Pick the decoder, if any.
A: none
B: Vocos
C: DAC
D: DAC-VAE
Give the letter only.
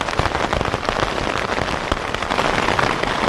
A